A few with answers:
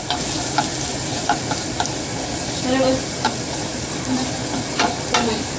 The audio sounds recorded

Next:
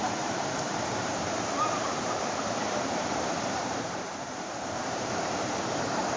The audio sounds remade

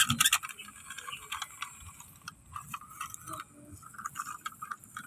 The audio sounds recorded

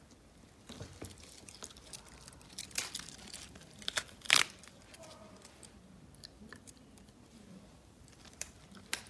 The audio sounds remade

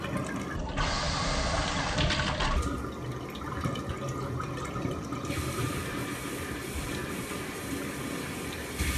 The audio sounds remade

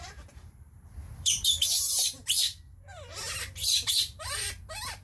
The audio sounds remade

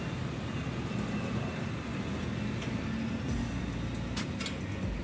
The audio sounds recorded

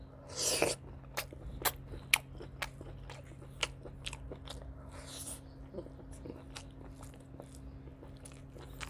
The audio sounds recorded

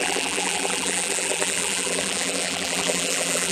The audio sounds remade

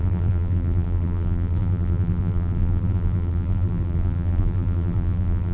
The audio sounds remade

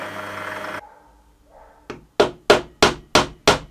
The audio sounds recorded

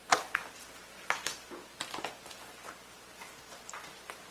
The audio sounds recorded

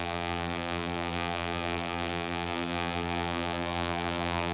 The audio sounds remade